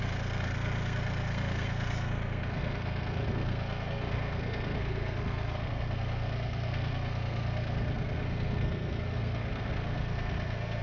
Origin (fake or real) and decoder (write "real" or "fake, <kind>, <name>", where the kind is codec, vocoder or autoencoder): fake, codec, SNAC